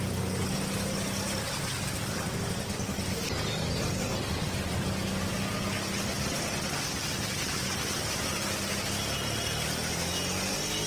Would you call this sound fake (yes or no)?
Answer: no